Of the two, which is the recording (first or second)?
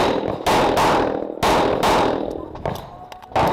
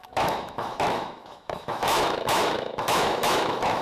first